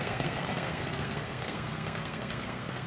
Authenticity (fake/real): fake